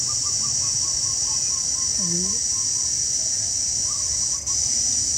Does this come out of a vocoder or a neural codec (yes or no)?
no